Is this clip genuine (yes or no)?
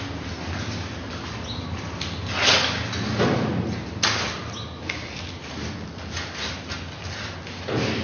yes